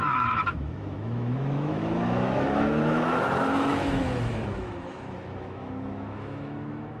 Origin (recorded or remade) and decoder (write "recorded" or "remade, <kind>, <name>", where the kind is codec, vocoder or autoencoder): remade, autoencoder, DAC-VAE